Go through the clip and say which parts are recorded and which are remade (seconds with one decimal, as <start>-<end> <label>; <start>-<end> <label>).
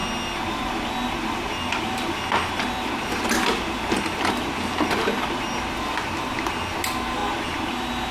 0.0-8.1 recorded